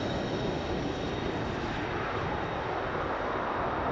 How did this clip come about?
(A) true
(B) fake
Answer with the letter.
A